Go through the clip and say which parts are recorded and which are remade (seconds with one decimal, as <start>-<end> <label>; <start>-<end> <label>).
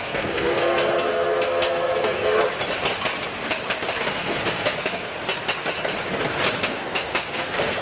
0.0-2.4 remade; 2.4-4.0 recorded; 4.0-5.1 remade; 5.1-6.6 recorded; 6.6-7.8 remade